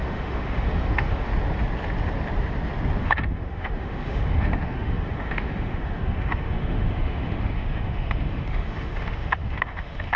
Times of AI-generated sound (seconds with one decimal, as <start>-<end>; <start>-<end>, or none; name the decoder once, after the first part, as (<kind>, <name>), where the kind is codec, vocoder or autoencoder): 0.0-1.3 (autoencoder, DAC-VAE); 3.0-10.2